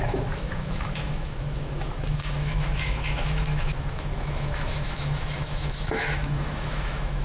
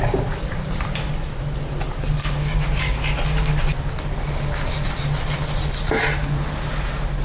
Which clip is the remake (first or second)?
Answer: first